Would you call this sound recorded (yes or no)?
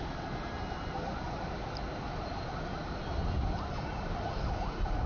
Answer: yes